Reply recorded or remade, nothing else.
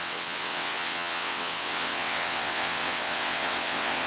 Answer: remade